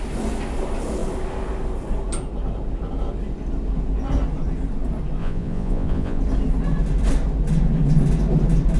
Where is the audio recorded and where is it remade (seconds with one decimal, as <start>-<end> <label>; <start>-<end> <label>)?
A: 0.0-5.2 recorded; 5.2-6.2 remade; 6.2-8.8 recorded